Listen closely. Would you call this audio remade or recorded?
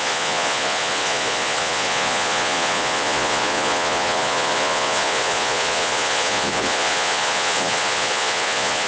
remade